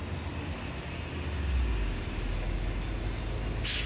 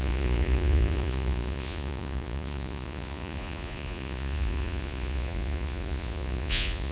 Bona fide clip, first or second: first